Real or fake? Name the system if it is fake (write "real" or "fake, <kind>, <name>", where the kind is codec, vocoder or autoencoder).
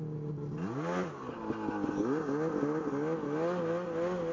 real